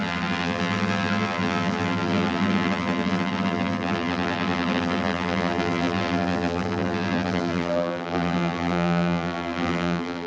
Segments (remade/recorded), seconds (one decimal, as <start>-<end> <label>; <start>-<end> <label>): 0.0-10.3 remade